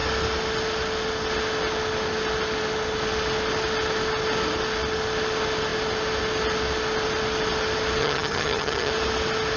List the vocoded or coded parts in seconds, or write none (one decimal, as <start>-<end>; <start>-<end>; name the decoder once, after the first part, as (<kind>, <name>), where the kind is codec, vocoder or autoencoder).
8.0-8.9 (vocoder, HiFi-GAN)